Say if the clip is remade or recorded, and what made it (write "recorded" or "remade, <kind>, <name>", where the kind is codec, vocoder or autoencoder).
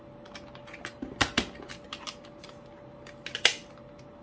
recorded